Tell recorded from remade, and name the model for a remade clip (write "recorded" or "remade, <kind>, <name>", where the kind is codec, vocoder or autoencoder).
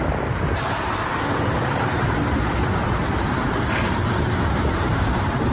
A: remade, vocoder, BigVGAN v2